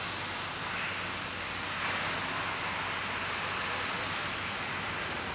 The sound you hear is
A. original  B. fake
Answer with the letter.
A